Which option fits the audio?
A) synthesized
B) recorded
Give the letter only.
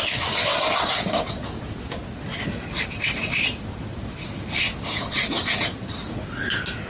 B